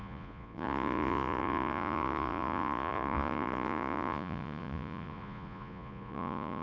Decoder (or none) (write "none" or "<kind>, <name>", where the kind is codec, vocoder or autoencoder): vocoder, Vocos